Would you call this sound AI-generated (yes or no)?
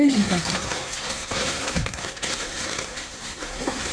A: yes